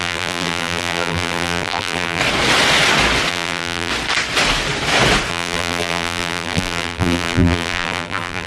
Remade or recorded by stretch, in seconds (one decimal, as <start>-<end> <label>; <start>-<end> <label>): 0.0-2.2 remade; 2.2-3.3 recorded; 3.3-3.9 remade; 3.9-5.3 recorded; 5.3-8.5 remade

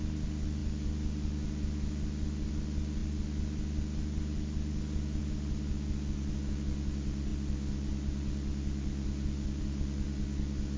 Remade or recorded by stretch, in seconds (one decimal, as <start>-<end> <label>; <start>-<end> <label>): 0.0-10.8 recorded